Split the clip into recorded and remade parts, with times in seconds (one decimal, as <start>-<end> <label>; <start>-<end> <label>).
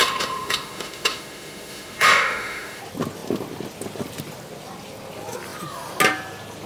0.0-2.8 remade; 2.8-6.7 recorded